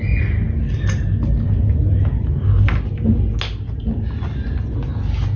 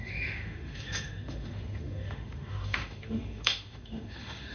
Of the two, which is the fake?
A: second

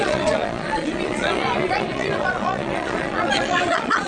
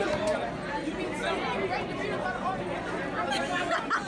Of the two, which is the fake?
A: first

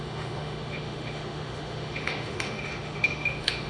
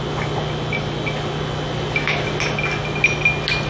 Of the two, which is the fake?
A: first